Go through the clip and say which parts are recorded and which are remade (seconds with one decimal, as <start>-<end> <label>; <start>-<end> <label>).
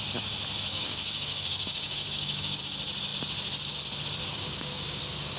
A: 0.0-0.7 recorded; 0.7-2.6 remade; 2.6-4.2 recorded; 4.2-5.0 remade; 5.0-5.4 recorded